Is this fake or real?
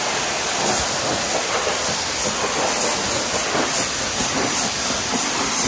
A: real